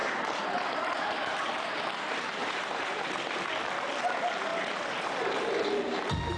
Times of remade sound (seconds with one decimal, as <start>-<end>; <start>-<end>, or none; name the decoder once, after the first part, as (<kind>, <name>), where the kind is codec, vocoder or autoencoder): 0.0-3.2 (vocoder, BigVGAN v2); 4.5-5.1

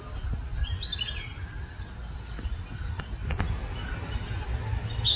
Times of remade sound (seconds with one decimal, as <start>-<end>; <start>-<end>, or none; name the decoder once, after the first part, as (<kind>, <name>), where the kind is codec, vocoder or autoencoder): none

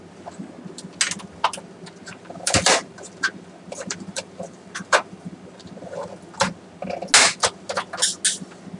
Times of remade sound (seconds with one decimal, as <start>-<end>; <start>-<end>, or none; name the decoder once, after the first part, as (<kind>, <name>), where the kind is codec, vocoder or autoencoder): 2.1-6.1 (vocoder, BigVGAN v2)

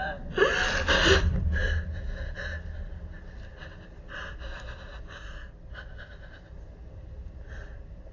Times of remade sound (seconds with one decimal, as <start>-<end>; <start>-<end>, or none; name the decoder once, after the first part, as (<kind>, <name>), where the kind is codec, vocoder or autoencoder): none

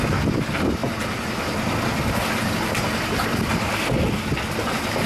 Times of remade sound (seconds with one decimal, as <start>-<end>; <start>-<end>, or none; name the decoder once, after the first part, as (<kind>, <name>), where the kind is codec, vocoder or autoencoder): none

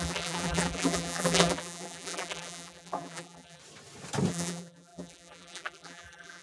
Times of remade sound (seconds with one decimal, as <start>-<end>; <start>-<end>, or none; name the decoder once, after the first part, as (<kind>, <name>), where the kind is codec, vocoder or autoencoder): 0.0-3.6 (vocoder, BigVGAN v2); 4.3-6.4